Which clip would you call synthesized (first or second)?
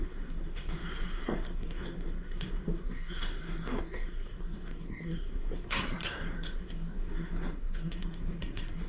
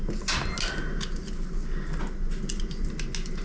first